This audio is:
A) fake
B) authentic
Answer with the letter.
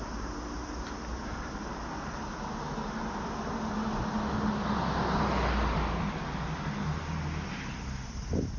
B